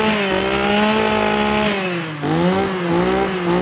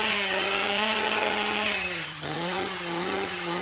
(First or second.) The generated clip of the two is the second